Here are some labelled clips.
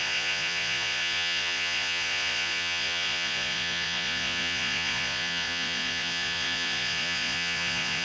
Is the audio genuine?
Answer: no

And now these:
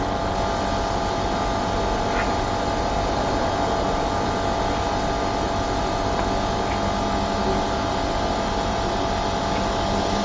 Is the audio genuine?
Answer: yes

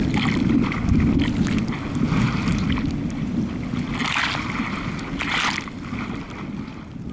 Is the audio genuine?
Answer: yes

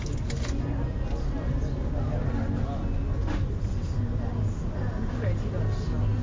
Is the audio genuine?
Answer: yes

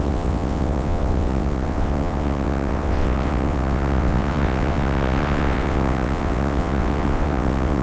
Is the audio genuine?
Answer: no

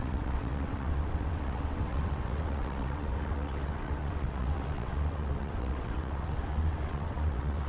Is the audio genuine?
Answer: no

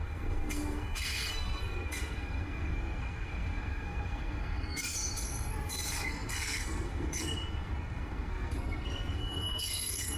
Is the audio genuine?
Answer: no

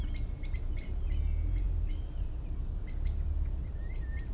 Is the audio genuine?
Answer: yes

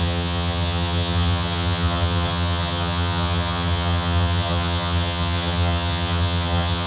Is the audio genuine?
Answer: no